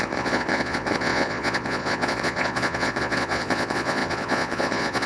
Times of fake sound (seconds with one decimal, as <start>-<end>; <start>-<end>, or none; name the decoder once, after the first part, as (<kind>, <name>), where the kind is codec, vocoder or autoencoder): 0.0-5.1 (vocoder, Vocos)